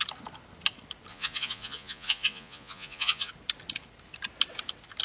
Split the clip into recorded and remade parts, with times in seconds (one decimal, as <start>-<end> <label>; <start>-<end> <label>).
0.0-1.1 recorded; 1.1-3.3 remade; 3.3-5.0 recorded